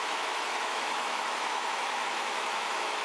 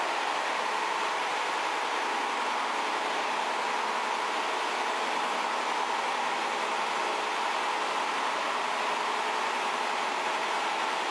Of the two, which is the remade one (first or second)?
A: first